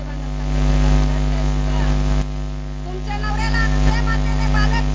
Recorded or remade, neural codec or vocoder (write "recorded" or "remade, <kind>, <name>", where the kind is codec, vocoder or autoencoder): recorded